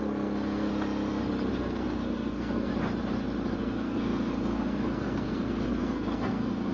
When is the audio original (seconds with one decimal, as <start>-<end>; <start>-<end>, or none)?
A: 0.7-1.5; 2.7-3.6